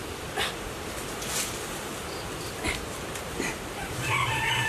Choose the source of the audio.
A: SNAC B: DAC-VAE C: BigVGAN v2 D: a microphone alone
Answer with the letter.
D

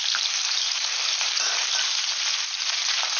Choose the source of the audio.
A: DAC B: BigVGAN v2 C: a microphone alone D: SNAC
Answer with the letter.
B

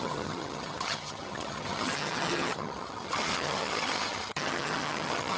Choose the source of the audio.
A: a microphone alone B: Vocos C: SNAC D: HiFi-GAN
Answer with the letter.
D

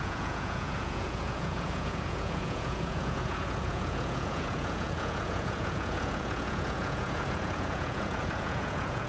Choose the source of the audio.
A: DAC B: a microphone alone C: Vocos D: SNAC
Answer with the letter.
C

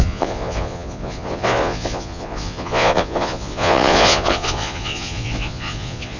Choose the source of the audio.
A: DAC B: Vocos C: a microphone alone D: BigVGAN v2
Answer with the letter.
B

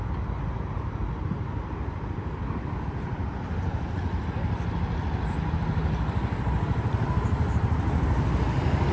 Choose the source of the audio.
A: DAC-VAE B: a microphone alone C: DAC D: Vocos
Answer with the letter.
B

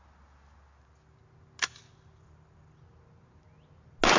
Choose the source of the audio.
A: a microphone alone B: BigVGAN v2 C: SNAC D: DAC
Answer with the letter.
A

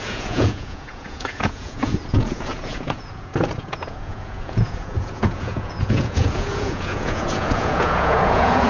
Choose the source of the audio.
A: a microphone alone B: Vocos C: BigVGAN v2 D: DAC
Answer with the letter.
B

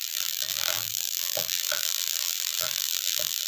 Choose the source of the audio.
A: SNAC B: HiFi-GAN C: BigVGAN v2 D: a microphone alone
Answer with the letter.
C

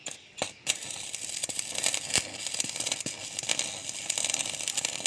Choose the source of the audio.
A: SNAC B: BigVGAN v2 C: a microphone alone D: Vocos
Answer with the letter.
B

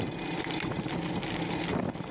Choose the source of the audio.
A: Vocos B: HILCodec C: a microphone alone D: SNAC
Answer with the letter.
C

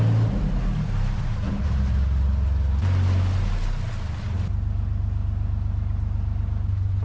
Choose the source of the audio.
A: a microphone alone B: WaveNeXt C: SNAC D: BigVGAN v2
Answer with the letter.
A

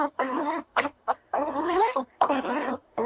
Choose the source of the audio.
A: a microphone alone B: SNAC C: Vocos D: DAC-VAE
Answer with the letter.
B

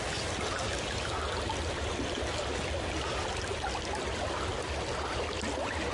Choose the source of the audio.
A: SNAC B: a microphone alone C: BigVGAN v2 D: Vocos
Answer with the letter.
B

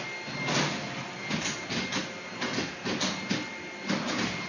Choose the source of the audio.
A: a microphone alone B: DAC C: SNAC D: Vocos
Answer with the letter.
A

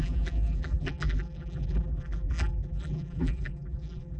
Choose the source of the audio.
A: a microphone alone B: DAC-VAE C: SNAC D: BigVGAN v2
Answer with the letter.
D